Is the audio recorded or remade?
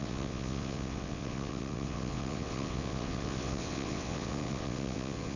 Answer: remade